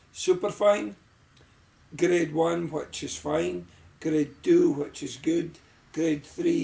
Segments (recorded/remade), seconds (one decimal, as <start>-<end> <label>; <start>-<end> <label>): 0.0-4.6 recorded; 4.6-6.6 remade